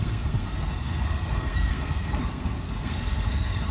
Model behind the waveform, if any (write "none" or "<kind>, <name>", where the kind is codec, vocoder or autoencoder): codec, SNAC